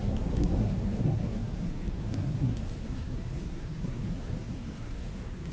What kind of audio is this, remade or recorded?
remade